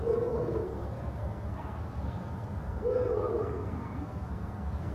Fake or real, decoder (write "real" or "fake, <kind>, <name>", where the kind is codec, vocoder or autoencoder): fake, codec, SNAC